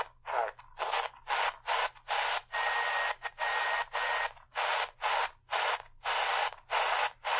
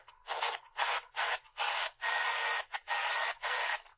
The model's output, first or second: second